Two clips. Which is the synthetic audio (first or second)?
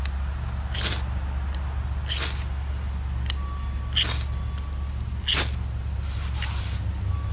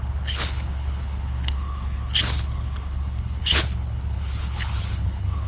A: second